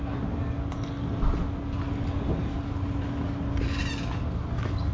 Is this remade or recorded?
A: recorded